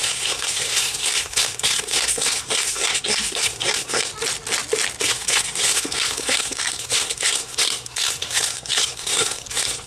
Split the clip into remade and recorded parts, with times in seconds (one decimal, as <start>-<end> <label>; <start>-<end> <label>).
0.0-4.1 remade; 4.1-5.0 recorded; 5.0-9.9 remade